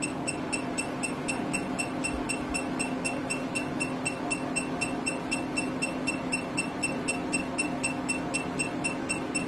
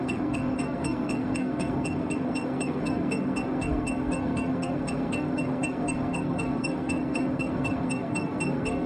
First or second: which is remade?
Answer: second